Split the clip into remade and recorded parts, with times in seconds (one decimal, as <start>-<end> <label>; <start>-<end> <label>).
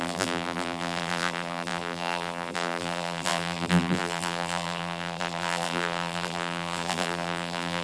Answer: 0.0-7.8 remade